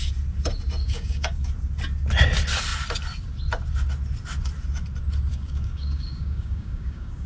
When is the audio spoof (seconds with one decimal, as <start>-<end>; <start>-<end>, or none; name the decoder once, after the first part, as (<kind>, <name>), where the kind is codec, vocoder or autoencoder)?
0.8-1.5 (codec, DAC); 5.3-7.3